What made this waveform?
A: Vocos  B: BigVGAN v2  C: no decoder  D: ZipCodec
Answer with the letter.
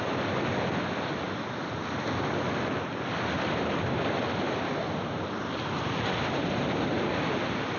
C